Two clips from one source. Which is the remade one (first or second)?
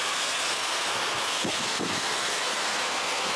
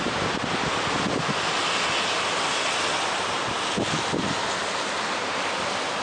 first